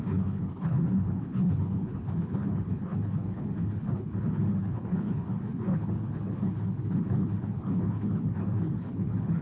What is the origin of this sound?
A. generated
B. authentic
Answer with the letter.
A